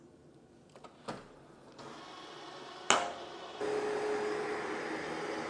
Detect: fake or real real